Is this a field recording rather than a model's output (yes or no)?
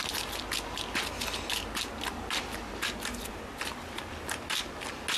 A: yes